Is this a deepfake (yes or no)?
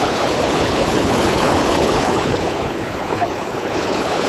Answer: yes